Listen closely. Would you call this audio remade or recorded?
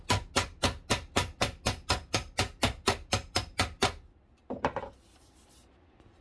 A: recorded